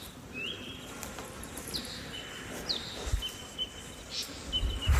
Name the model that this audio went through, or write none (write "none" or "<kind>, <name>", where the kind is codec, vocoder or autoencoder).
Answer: none